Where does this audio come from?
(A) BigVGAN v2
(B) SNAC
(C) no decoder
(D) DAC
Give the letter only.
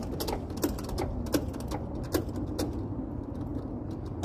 C